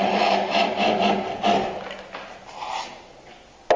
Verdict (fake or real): real